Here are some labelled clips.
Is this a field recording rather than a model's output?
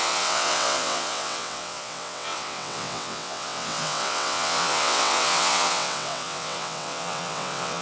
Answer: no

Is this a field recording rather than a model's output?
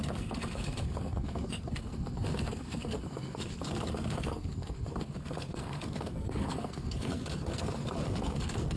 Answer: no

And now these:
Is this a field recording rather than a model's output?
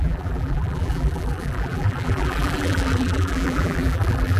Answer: no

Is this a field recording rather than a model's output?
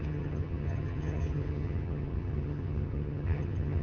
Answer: no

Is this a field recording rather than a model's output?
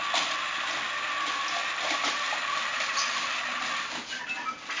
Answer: yes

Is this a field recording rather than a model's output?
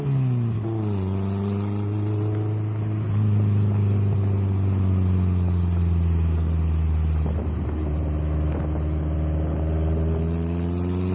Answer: yes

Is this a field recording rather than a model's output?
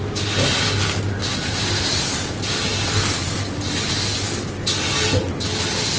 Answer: yes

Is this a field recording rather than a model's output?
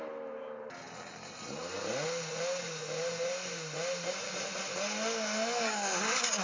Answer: yes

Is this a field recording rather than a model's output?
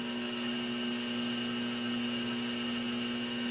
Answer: yes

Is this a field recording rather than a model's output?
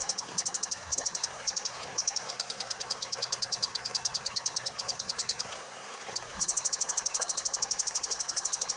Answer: no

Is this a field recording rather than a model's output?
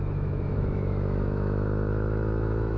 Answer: no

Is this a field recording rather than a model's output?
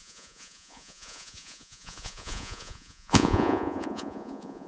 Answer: no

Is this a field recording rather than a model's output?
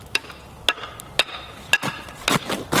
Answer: yes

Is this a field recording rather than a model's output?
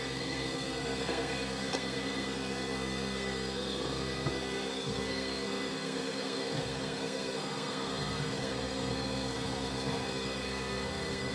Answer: no